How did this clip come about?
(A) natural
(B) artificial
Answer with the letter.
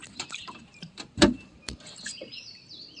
B